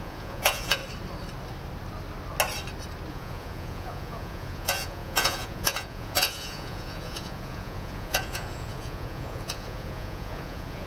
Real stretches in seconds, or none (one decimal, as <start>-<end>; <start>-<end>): 0.8-3.1